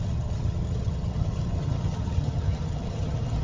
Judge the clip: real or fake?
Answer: fake